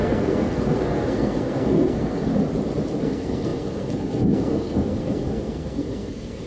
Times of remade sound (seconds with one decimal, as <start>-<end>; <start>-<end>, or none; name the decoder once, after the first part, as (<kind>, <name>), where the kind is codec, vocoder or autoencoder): 0.0-2.3 (codec, SNAC); 3.0-6.5